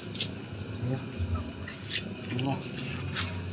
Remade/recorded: recorded